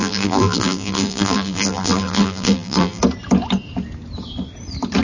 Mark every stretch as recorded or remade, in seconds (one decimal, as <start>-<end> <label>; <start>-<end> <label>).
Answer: 0.0-3.0 remade; 3.0-5.0 recorded